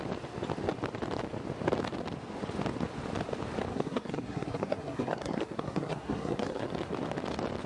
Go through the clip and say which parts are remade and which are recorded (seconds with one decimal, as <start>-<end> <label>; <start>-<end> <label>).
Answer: 0.0-3.7 recorded; 3.7-6.7 remade; 6.7-7.7 recorded